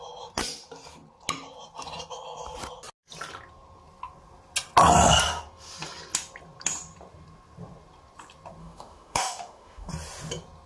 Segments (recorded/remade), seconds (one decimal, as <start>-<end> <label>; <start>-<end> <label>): 0.0-8.6 recorded; 8.6-9.9 remade; 9.9-10.7 recorded